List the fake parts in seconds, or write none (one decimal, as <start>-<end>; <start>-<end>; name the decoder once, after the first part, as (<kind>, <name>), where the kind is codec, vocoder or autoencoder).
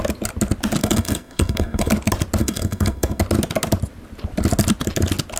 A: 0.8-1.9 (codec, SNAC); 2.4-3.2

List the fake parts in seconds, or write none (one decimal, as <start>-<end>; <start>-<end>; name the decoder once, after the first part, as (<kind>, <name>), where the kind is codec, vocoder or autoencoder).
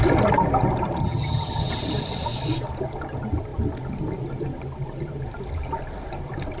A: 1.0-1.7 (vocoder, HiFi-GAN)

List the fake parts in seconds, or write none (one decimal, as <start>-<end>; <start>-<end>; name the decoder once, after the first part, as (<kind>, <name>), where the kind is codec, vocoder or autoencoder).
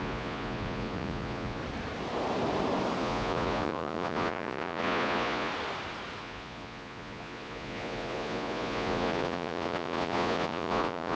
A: 0.0-1.6 (vocoder, Vocos); 3.0-5.5; 6.2-11.1